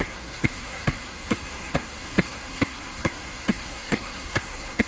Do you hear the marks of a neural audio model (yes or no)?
yes